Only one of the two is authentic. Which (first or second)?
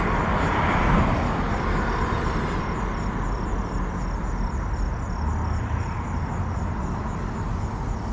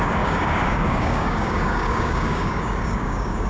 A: first